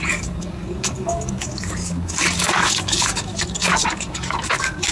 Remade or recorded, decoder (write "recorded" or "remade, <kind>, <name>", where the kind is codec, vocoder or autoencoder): remade, codec, DAC